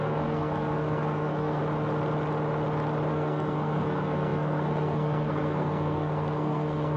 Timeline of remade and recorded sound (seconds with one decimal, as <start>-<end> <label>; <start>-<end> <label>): 0.0-1.6 remade; 1.6-3.1 recorded; 3.1-7.0 remade